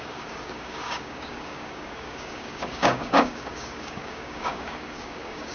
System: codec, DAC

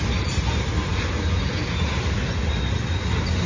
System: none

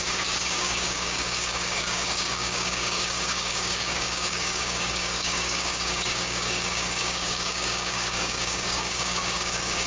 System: codec, DAC